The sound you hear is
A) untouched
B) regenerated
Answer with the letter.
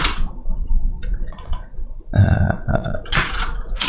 B